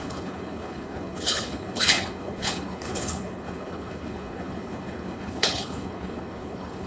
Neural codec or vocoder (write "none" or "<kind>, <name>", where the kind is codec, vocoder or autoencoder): codec, HILCodec